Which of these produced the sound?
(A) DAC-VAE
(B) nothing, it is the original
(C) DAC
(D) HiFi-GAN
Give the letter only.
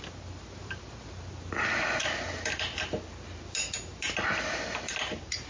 B